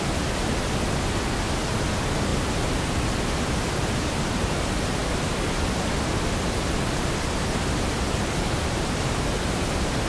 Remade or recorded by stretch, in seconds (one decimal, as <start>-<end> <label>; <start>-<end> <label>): 0.0-10.1 recorded